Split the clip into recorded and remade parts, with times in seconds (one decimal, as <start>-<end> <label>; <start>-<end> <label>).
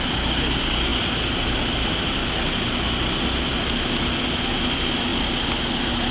0.0-6.1 recorded